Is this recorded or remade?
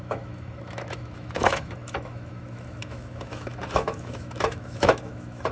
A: remade